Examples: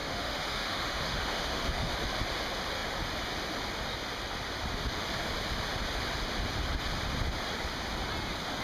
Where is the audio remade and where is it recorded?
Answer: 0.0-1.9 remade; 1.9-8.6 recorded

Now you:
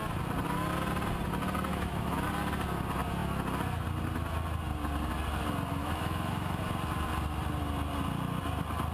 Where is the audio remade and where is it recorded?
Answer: 0.0-1.7 recorded; 1.7-2.3 remade; 2.3-5.8 recorded; 5.8-6.6 remade; 6.6-8.9 recorded